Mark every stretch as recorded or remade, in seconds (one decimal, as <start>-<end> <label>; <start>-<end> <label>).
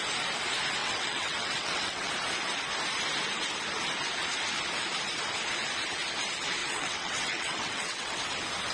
0.0-0.8 recorded; 0.8-2.1 remade; 2.1-6.6 recorded; 6.6-8.2 remade; 8.2-8.7 recorded